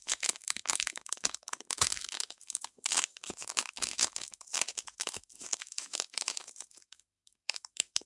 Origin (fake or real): fake